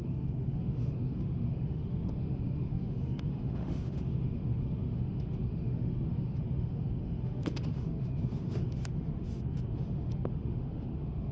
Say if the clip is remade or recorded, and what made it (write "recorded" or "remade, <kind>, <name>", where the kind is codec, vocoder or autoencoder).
remade, autoencoder, DAC-VAE